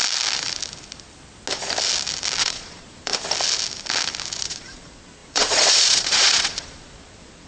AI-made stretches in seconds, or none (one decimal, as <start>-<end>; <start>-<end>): 2.4-3.1; 4.4-7.5